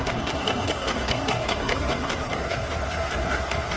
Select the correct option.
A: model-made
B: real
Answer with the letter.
A